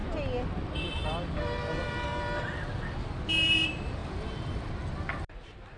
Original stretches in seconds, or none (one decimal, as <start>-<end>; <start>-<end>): 0.0-5.8